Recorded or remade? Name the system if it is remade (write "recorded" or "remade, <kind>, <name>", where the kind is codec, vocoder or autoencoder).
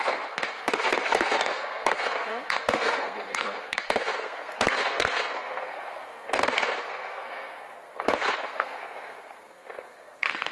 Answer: remade, codec, SNAC